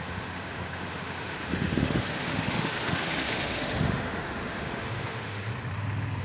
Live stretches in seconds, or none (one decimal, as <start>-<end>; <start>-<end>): 5.5-6.2